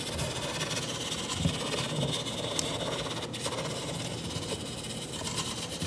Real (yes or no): yes